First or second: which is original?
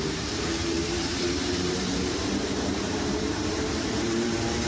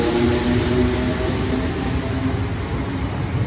second